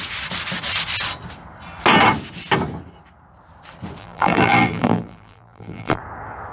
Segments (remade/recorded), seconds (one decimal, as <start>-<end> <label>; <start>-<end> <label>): 0.0-4.0 recorded; 4.0-6.0 remade; 6.0-6.5 recorded

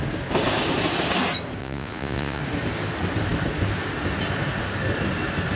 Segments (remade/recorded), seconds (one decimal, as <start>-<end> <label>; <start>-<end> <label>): 0.0-1.6 recorded; 1.6-2.4 remade; 2.4-5.6 recorded

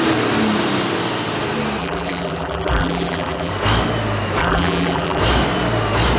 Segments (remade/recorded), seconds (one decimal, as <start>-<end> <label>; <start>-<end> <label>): 0.0-1.8 recorded; 1.8-3.5 remade; 3.5-4.4 recorded; 4.4-5.2 remade; 5.2-6.2 recorded

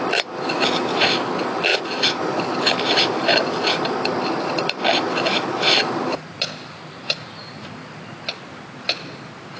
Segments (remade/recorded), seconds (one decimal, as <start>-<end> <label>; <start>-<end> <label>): 0.0-9.6 recorded

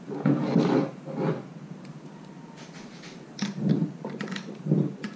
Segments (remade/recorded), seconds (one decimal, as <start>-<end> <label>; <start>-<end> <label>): 0.0-5.2 recorded

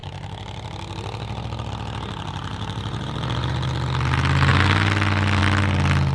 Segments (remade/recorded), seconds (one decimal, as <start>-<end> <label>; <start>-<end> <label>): 0.0-2.5 recorded; 2.5-3.7 remade; 3.7-6.1 recorded